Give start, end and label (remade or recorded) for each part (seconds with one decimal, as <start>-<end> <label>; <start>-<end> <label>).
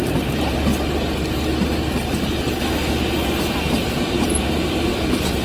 0.0-0.7 remade; 0.7-3.9 recorded; 3.9-5.4 remade